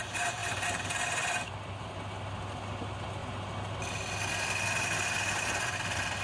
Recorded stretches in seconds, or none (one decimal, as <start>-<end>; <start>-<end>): 0.0-6.2